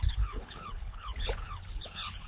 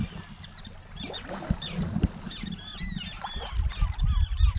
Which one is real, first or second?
second